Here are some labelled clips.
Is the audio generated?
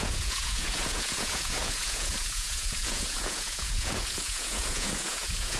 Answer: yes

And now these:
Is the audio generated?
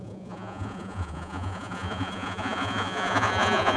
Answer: yes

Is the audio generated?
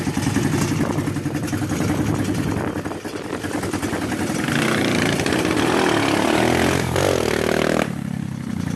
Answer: no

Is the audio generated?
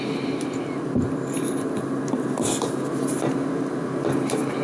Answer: no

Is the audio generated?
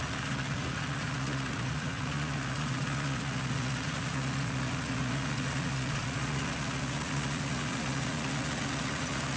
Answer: yes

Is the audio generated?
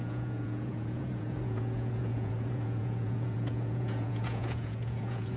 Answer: yes